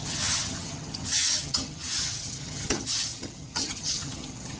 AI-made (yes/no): yes